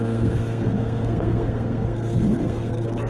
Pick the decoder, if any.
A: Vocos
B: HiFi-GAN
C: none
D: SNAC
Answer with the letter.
D